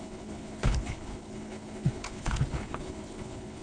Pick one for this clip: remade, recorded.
remade